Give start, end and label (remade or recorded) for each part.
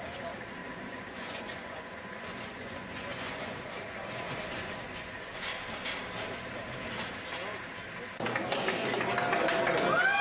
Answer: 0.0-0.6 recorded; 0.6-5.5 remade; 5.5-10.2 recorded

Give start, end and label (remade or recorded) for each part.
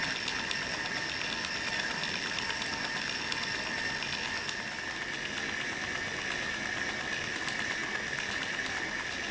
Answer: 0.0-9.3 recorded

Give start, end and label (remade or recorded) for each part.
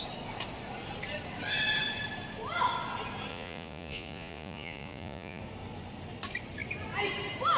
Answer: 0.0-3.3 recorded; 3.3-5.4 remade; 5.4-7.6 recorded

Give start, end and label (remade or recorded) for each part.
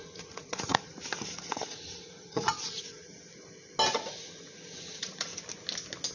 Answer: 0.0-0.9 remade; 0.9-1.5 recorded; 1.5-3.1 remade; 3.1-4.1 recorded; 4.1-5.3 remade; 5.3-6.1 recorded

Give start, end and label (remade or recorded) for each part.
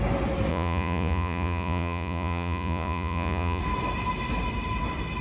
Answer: 0.0-0.5 recorded; 0.5-3.6 remade; 3.6-5.2 recorded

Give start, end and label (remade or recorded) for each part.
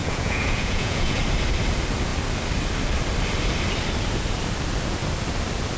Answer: 0.0-1.2 remade; 1.2-5.8 recorded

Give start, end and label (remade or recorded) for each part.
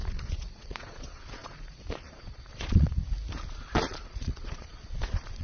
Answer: 0.0-2.9 remade; 2.9-3.5 recorded; 3.5-5.4 remade